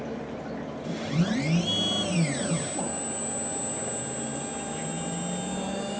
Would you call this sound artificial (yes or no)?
no